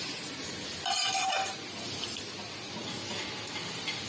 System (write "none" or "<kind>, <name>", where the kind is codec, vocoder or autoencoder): none